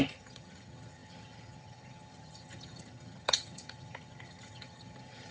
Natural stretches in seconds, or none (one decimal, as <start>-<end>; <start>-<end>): none